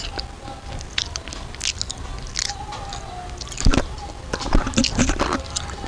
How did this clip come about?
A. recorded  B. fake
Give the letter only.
A